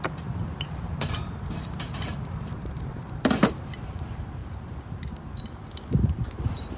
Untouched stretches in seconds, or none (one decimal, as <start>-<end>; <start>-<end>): 4.4-5.9